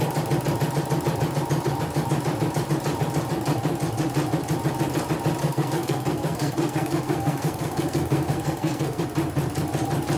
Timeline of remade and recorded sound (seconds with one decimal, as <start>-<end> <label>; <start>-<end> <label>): 0.0-5.4 recorded; 5.4-9.0 remade; 9.0-10.2 recorded